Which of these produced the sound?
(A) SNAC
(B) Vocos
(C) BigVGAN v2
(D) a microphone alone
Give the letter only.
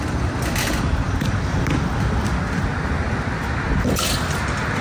D